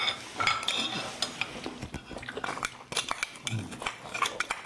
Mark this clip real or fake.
real